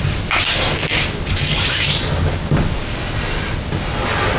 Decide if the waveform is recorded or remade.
recorded